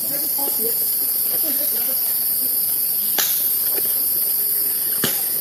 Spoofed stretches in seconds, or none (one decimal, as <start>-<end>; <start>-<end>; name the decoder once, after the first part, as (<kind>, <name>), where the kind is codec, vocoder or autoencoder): 0.4-0.9 (vocoder, Vocos)